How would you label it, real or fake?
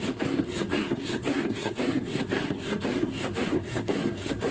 fake